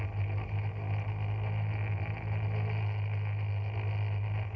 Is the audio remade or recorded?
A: recorded